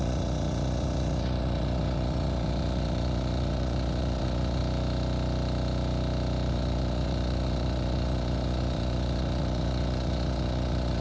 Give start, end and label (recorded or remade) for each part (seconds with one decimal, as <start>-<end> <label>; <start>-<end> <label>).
0.0-4.6 remade; 4.6-6.5 recorded; 6.5-11.0 remade